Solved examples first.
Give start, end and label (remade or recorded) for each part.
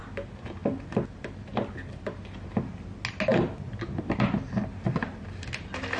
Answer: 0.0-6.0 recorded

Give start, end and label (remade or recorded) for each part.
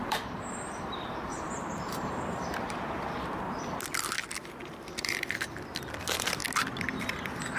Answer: 0.0-3.4 remade; 3.4-4.6 recorded; 4.6-5.5 remade; 5.5-7.6 recorded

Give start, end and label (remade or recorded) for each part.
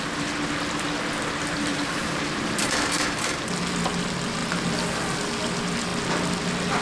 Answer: 0.0-1.7 recorded; 1.7-3.5 remade; 3.5-6.8 recorded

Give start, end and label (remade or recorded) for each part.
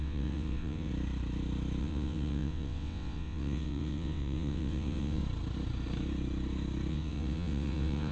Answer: 0.0-0.9 remade; 0.9-1.8 recorded; 1.8-5.2 remade; 5.2-6.9 recorded; 6.9-8.1 remade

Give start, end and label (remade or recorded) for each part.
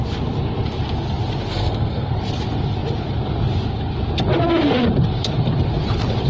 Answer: 0.0-1.5 recorded; 1.5-2.1 remade; 2.1-6.3 recorded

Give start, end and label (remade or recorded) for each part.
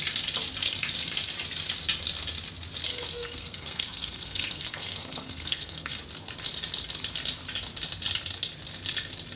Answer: 0.0-2.9 recorded; 2.9-5.9 remade; 5.9-9.4 recorded